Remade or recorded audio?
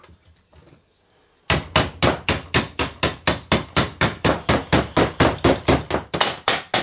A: recorded